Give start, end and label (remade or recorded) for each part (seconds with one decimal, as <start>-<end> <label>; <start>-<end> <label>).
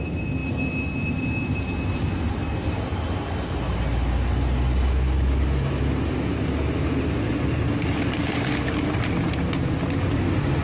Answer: 0.0-10.6 recorded